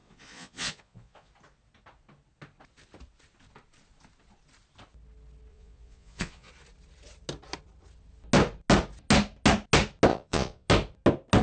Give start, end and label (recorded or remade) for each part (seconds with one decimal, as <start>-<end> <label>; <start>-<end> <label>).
0.0-1.3 remade; 1.3-5.5 recorded; 5.5-6.5 remade; 6.5-10.1 recorded; 10.1-10.7 remade; 10.7-11.4 recorded